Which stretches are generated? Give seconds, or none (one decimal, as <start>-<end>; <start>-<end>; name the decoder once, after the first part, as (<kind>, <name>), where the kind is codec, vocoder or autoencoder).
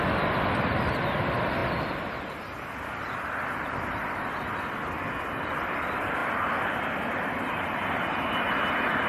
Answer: none